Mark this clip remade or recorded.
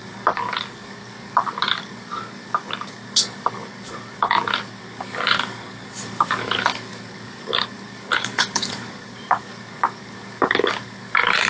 remade